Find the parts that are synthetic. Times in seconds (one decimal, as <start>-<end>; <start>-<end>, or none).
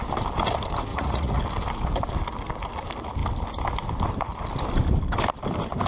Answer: 0.9-1.4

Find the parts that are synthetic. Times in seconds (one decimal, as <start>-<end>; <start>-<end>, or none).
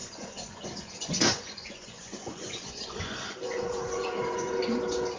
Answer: 0.0-4.6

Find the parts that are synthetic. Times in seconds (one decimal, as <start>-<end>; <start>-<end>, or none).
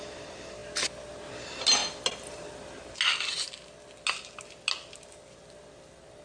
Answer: none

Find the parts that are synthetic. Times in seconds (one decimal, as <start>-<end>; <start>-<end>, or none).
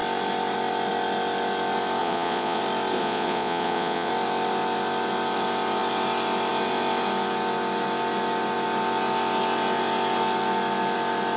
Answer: 2.0-2.6; 3.0-4.1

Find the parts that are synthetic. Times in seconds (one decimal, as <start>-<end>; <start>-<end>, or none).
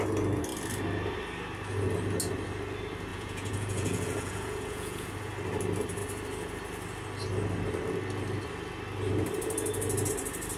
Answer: 3.1-5.1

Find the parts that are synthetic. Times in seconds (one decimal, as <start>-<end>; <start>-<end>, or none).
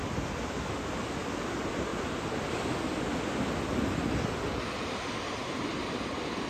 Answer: none